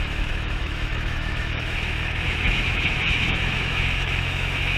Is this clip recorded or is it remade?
remade